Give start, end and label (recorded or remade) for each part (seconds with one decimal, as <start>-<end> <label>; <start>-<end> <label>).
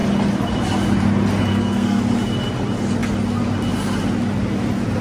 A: 0.0-1.5 recorded; 1.5-2.0 remade; 2.0-5.0 recorded